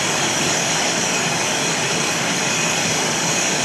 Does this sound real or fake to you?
fake